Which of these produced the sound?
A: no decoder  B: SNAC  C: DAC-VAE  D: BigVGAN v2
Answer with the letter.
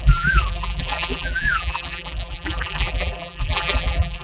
D